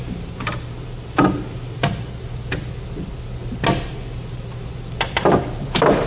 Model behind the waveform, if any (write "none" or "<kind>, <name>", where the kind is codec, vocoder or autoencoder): none